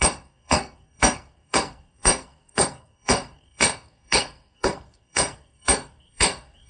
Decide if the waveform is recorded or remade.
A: remade